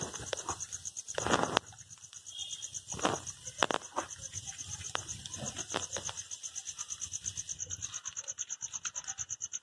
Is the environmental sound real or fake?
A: real